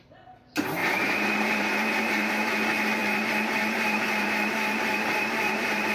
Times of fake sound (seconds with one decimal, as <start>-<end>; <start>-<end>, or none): 0.8-2.3; 3.0-5.9